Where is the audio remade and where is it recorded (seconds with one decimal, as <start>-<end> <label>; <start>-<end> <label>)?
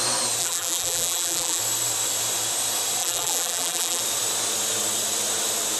0.0-0.4 recorded; 0.4-1.6 remade; 1.6-3.0 recorded; 3.0-4.0 remade; 4.0-5.8 recorded